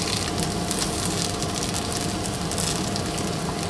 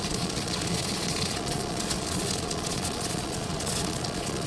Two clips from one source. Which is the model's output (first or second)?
second